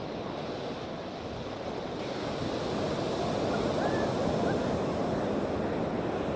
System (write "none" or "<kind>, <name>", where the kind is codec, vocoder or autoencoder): none